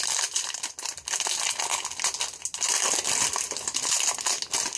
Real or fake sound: real